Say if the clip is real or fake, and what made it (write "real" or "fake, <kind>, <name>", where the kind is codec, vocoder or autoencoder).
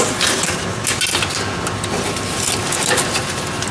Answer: real